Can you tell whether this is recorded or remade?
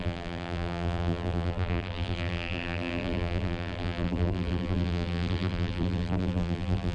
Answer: remade